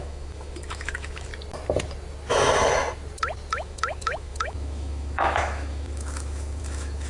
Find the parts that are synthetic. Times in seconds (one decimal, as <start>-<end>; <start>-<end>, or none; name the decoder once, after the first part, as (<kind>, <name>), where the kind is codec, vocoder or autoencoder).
0.0-1.3 (autoencoder, DAC-VAE); 3.5-7.1